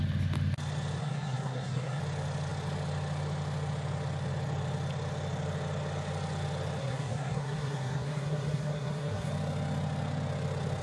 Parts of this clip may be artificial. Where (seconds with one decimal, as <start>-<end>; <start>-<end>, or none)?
1.0-2.0; 6.8-9.3